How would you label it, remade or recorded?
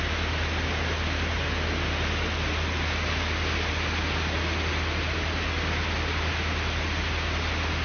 recorded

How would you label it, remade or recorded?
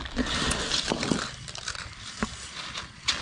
recorded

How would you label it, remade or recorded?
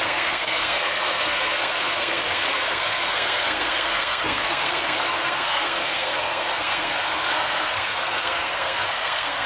remade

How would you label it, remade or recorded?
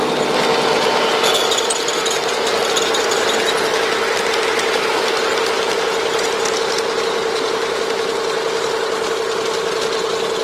recorded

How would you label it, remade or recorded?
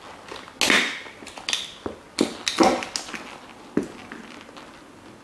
recorded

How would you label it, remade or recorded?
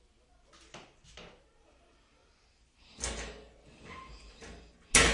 recorded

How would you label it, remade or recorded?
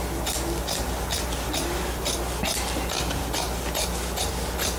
recorded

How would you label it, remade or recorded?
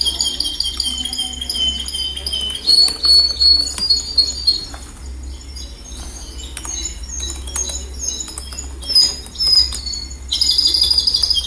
recorded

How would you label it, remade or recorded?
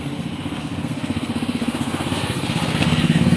remade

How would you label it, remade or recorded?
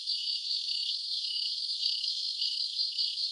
remade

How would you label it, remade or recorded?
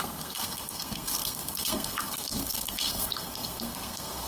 remade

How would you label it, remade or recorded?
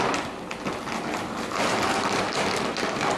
recorded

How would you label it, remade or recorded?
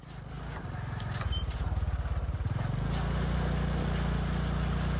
recorded